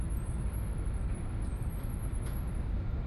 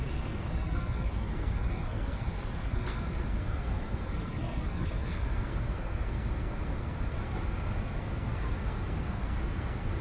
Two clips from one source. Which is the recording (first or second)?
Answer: first